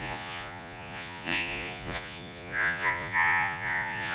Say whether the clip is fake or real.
fake